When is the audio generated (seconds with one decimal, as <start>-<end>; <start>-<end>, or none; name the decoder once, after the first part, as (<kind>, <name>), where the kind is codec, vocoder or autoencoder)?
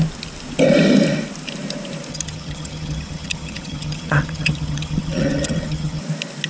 2.1-6.0 (vocoder, HiFi-GAN)